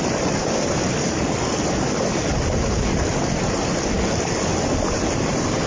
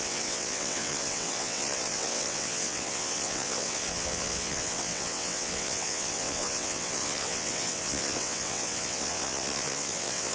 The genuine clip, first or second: first